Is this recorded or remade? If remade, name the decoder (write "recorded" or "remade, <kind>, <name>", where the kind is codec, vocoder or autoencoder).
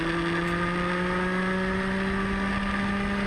recorded